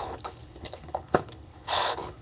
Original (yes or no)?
no